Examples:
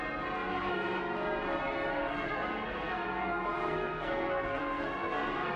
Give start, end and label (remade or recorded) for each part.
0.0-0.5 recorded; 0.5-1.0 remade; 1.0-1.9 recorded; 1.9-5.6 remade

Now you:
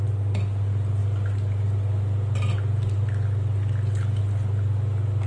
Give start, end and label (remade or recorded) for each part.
0.0-5.3 recorded

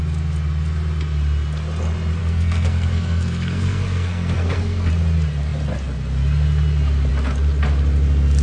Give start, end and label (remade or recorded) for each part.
0.0-2.2 recorded; 2.2-4.9 remade; 4.9-8.4 recorded

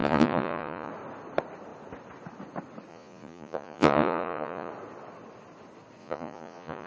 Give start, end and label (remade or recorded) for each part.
0.0-0.9 remade; 0.9-2.9 recorded; 2.9-4.7 remade; 4.7-6.0 recorded; 6.0-6.9 remade